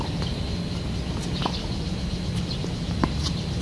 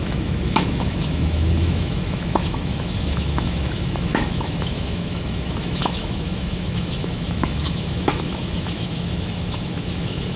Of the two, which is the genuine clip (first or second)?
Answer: first